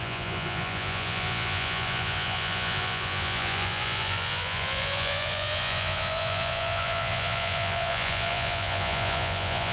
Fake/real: fake